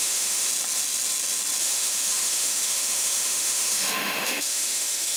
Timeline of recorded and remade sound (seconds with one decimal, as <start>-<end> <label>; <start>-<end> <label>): 0.0-0.5 remade; 0.5-1.6 recorded; 1.6-5.2 remade